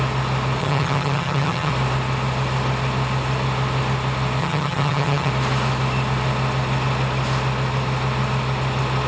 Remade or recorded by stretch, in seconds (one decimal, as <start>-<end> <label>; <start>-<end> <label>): 0.0-0.6 recorded; 0.6-1.7 remade; 1.7-4.4 recorded; 4.4-5.3 remade; 5.3-9.1 recorded